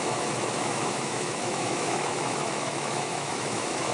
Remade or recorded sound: remade